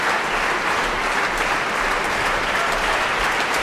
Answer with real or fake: real